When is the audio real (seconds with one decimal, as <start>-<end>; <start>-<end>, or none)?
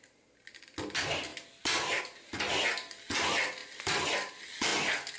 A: 0.0-5.2